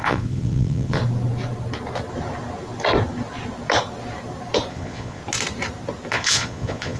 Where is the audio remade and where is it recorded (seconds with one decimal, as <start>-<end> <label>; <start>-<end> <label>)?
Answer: 0.0-1.0 remade; 1.0-4.7 recorded; 4.7-5.2 remade; 5.2-6.1 recorded; 6.1-7.0 remade